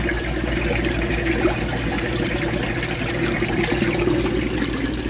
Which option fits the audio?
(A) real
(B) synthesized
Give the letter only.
A